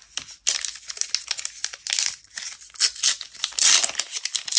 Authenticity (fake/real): real